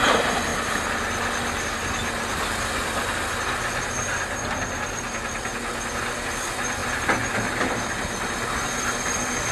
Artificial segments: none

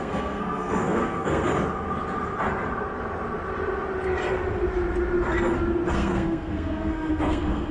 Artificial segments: 0.0-1.5 (codec, SNAC); 5.9-7.7

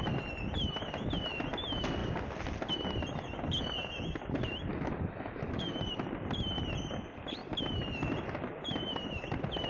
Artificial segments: 4.7-5.8 (autoencoder, DAC-VAE)

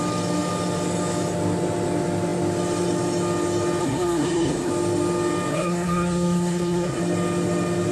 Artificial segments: 3.8-4.7 (codec, SNAC); 5.5-7.0

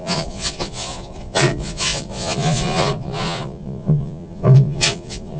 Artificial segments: 0.0-5.4 (vocoder, Vocos)

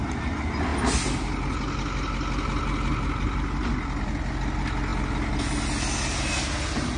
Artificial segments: none